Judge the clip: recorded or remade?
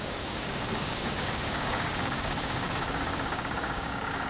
remade